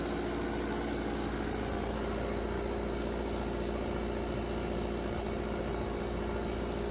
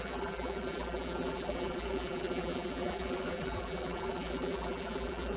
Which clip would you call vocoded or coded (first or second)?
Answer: second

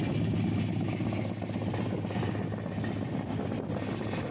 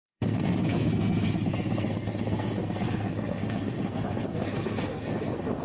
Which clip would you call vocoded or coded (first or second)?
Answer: second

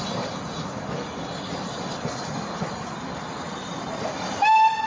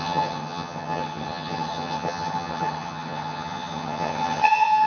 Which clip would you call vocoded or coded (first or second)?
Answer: second